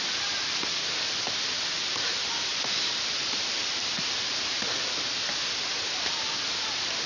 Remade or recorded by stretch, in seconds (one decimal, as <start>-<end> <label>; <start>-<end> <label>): 0.0-2.5 recorded; 2.5-4.4 remade; 4.4-7.1 recorded